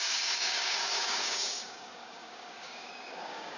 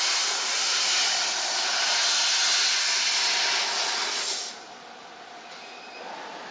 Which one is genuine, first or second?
second